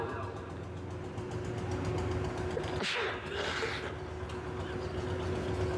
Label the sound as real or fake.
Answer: real